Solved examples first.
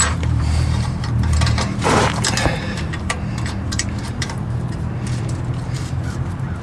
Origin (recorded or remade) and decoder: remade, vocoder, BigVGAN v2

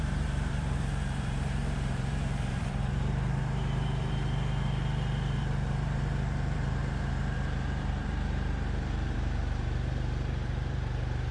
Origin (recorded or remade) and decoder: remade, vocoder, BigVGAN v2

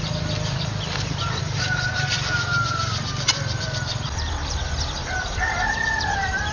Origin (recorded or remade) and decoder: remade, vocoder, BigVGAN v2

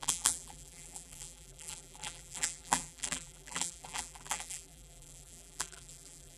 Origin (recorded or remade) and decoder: remade, vocoder, BigVGAN v2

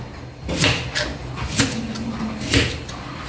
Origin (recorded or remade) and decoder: recorded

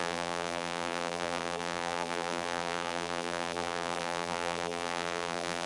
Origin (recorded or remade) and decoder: remade, vocoder, BigVGAN v2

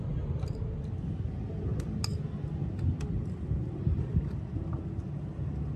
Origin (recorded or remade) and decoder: recorded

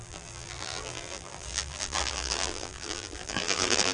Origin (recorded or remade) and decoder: remade, vocoder, BigVGAN v2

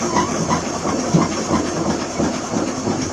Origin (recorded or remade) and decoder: remade, vocoder, BigVGAN v2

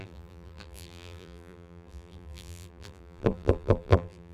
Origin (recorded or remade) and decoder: remade, vocoder, BigVGAN v2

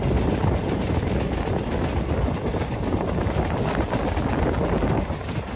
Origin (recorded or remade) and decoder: recorded